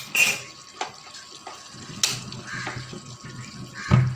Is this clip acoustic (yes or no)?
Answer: yes